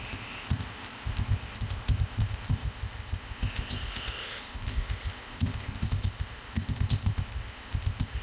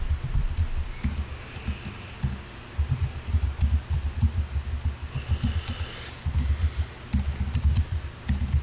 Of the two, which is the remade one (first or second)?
first